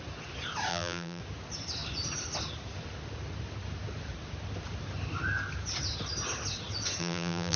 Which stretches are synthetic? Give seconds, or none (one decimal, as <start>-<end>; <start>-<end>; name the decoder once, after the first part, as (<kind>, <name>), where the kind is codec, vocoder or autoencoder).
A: 0.7-1.2 (vocoder, BigVGAN v2); 7.0-7.6